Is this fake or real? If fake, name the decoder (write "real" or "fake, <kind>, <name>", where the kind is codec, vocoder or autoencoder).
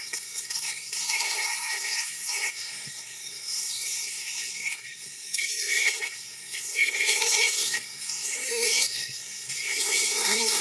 fake, codec, SNAC